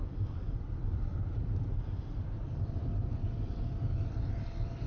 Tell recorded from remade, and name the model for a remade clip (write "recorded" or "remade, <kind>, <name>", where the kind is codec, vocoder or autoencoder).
remade, vocoder, BigVGAN v2